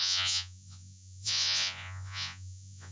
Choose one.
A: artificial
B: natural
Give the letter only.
A